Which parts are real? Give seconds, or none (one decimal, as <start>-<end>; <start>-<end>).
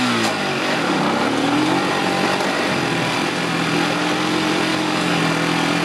0.0-0.4; 1.0-4.7; 5.2-5.8